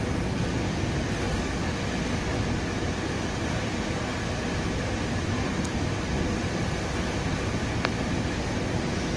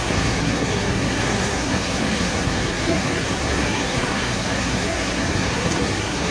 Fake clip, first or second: second